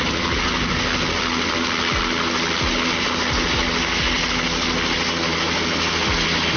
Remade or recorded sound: recorded